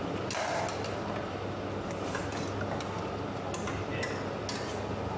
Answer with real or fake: real